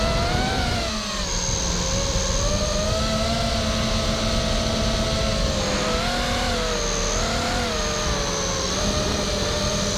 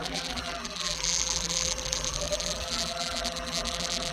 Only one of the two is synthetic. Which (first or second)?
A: second